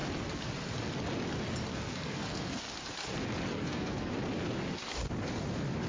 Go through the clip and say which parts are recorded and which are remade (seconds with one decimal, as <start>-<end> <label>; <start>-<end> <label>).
0.0-1.7 recorded; 1.7-2.6 remade; 2.6-3.5 recorded; 3.5-4.1 remade; 4.1-5.9 recorded